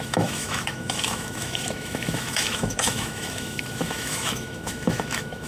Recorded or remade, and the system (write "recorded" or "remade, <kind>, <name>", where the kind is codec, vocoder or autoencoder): remade, autoencoder, DAC-VAE